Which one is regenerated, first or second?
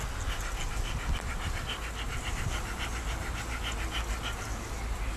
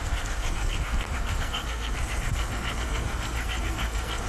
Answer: second